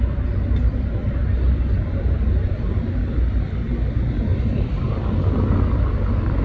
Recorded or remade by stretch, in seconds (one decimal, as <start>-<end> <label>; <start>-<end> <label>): 0.0-6.4 recorded